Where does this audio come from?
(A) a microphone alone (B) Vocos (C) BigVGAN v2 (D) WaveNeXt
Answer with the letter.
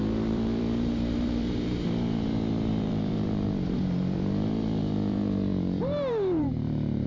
C